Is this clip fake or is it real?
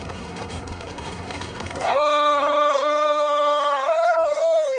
fake